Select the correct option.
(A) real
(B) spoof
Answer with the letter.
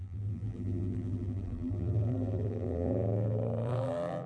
B